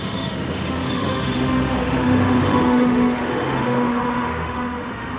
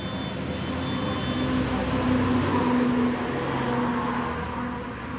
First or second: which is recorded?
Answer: second